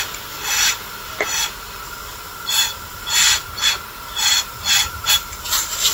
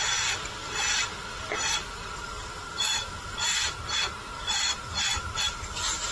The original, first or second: first